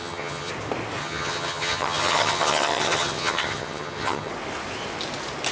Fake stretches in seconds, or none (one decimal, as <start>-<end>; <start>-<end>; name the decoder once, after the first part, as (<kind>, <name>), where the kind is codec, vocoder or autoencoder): 0.0-0.5 (vocoder, HiFi-GAN); 1.0-4.3